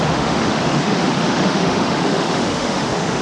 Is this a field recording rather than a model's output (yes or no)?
no